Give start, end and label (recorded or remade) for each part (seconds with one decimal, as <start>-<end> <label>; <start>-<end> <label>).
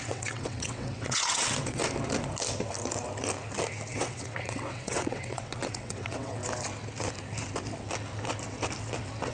0.0-1.8 remade; 1.8-3.9 recorded; 3.9-6.4 remade; 6.4-9.3 recorded